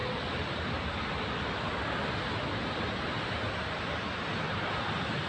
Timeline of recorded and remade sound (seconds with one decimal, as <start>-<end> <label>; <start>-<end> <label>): 0.0-5.3 recorded